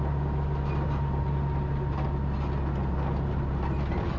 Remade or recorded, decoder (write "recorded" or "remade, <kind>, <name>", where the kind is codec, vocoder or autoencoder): recorded